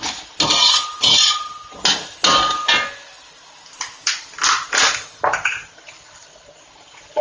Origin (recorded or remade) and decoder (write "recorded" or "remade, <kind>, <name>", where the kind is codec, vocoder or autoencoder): recorded